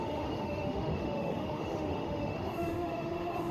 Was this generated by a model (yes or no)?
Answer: yes